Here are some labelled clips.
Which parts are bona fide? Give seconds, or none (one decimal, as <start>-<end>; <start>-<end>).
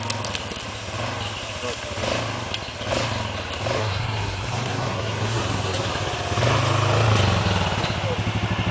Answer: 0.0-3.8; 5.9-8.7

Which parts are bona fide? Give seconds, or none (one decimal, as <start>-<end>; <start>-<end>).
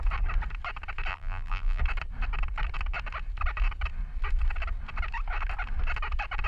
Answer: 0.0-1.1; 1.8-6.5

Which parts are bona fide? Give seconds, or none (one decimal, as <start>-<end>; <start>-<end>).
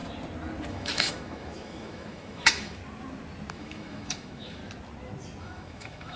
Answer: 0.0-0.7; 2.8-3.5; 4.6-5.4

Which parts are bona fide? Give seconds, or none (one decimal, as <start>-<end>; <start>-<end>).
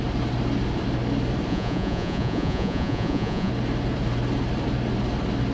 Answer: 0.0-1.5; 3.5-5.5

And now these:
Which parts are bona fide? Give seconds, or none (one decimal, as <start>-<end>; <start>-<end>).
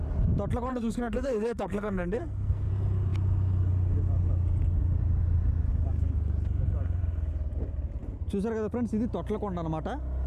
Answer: 0.0-0.7; 2.7-10.3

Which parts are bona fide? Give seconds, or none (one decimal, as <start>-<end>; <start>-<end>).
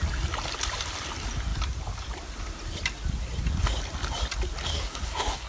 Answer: 0.0-4.7